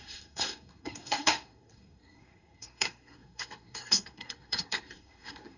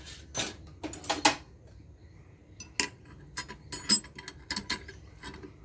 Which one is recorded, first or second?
second